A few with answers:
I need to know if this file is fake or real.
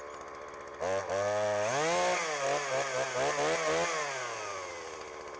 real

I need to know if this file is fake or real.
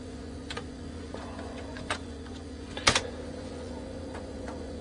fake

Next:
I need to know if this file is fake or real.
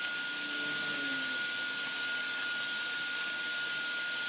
real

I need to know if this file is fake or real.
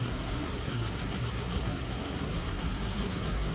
fake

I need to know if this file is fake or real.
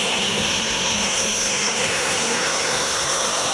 fake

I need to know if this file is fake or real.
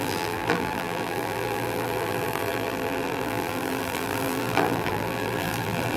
fake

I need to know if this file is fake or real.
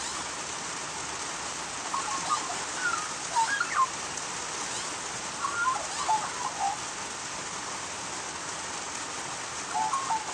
real